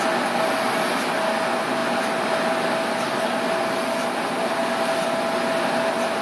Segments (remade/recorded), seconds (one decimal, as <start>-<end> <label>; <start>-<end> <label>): 0.0-6.2 recorded